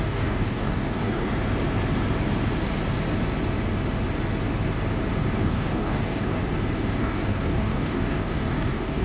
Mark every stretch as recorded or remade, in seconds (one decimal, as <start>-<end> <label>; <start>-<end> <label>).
0.0-1.3 remade; 1.3-5.4 recorded; 5.4-6.4 remade; 6.4-7.0 recorded; 7.0-9.0 remade